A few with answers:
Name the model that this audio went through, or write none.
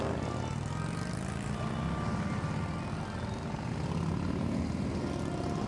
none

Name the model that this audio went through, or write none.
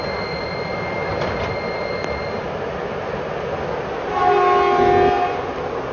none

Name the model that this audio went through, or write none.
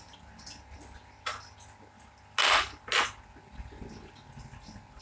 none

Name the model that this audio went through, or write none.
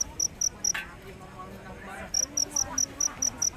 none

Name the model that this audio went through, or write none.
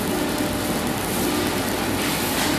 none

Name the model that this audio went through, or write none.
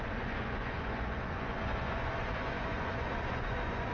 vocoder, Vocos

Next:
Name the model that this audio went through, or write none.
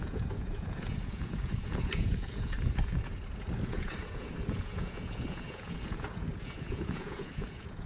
vocoder, Vocos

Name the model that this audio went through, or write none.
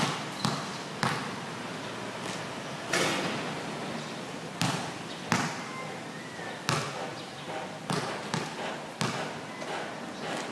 none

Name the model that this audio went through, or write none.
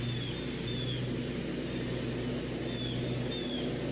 none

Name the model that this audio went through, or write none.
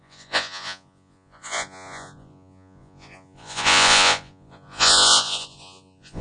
vocoder, Vocos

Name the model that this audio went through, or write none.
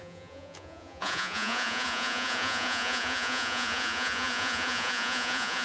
vocoder, Vocos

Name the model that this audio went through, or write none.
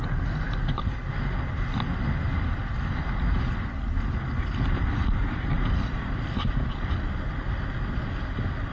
none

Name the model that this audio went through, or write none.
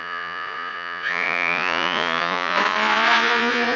vocoder, Vocos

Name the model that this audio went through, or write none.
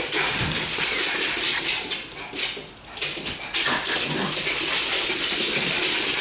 none